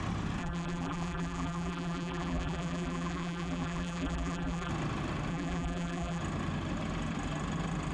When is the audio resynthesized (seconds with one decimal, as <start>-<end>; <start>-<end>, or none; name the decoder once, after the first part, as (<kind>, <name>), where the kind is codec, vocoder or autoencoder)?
0.4-4.7 (vocoder, BigVGAN v2); 5.3-6.2